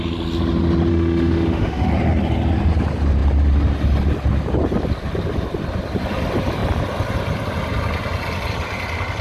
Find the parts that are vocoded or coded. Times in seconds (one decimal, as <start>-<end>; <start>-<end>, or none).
0.9-1.9